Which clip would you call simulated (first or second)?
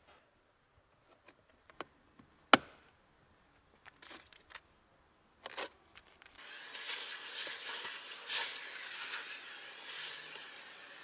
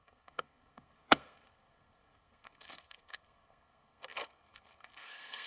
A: second